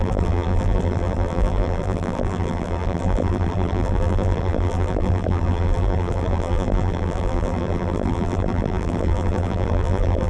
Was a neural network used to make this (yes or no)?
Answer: yes